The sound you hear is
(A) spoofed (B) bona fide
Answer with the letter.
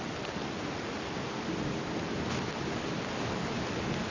B